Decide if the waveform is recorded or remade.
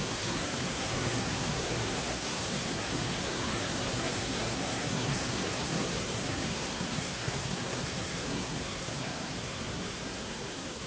remade